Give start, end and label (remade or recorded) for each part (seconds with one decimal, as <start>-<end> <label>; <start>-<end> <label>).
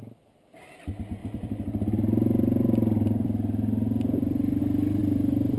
0.0-1.2 recorded; 1.2-4.6 remade; 4.6-5.0 recorded; 5.0-5.6 remade